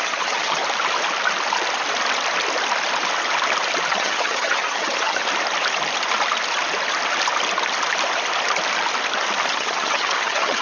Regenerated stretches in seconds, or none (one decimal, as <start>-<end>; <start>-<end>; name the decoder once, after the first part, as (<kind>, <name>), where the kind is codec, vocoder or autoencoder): 0.0-0.6 (vocoder, HiFi-GAN); 3.9-5.2; 9.5-10.6